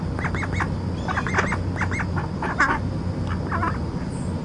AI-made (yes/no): no